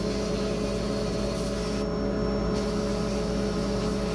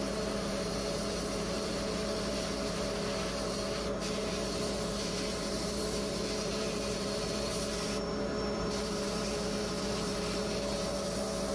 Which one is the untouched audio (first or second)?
first